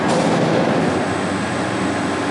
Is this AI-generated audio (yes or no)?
no